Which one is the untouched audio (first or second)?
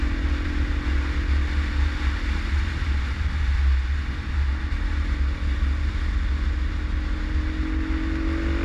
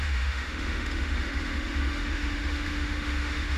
first